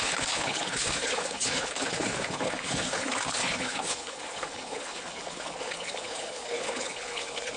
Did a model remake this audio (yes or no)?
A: yes